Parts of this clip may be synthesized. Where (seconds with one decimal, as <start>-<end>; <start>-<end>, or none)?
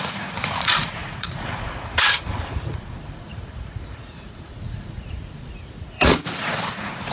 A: 0.0-7.1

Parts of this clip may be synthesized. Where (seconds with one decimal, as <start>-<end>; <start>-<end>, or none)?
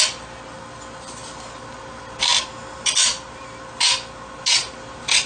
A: none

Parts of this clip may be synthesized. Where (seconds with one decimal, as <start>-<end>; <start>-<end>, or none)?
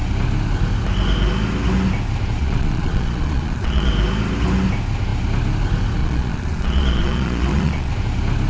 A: 2.4-3.9; 6.0-7.9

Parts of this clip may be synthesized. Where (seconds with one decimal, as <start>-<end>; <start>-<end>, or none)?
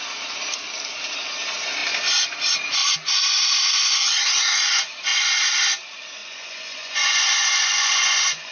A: 6.2-8.5